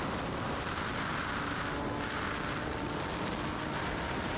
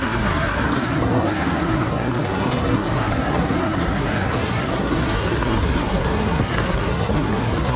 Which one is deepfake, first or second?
second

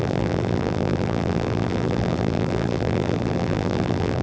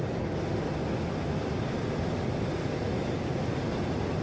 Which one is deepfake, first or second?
first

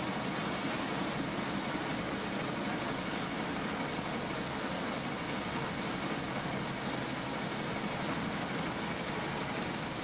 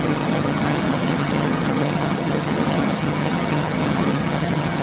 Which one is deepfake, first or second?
second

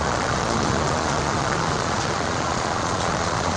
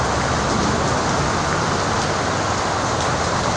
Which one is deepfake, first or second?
first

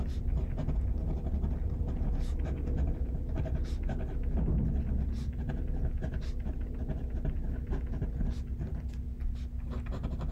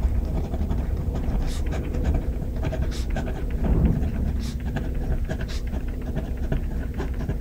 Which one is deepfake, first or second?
second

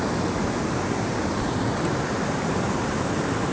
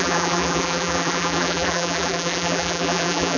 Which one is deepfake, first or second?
second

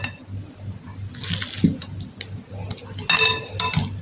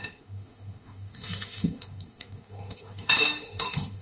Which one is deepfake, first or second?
second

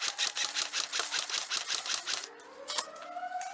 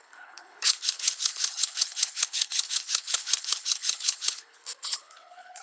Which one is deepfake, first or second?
second